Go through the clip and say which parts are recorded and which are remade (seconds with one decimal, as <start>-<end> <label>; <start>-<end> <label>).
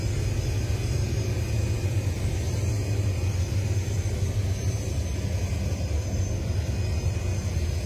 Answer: 0.0-7.9 recorded